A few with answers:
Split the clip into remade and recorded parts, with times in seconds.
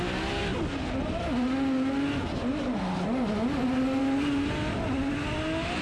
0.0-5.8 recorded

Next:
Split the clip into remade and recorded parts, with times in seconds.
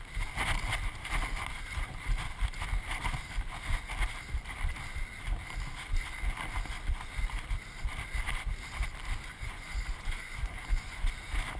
0.0-9.3 recorded; 9.3-11.1 remade; 11.1-11.6 recorded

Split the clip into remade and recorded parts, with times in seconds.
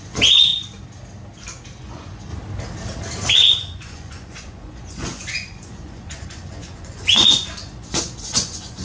0.0-0.5 remade; 0.5-1.8 recorded; 1.8-2.3 remade; 2.3-3.3 recorded; 3.3-8.8 remade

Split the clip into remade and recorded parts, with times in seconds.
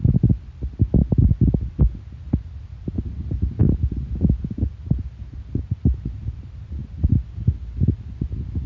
0.0-8.7 recorded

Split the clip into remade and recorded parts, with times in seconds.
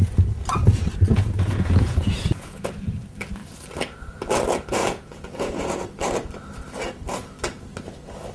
0.0-1.1 recorded; 1.1-2.9 remade; 2.9-4.8 recorded; 4.8-5.8 remade; 5.8-8.3 recorded